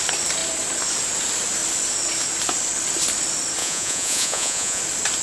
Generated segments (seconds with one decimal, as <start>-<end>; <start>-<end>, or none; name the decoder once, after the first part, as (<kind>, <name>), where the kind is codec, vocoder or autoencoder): 3.6-4.8 (vocoder, Vocos)